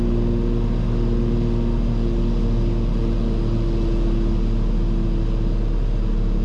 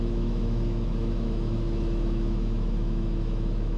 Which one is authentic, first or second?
first